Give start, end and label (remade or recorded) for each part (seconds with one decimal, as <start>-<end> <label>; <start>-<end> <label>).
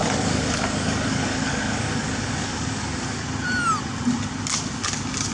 0.0-3.2 remade; 3.2-5.3 recorded